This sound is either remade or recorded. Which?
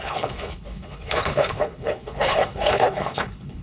remade